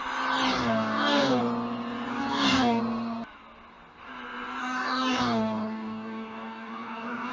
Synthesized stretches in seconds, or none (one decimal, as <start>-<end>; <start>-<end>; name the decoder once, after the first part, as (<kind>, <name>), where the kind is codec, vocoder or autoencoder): 0.6-1.4 (codec, DAC); 2.1-2.8; 4.6-7.3